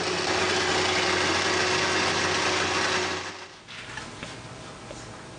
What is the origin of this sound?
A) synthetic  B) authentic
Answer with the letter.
B